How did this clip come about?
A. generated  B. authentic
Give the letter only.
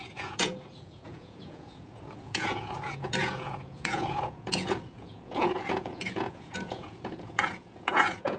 A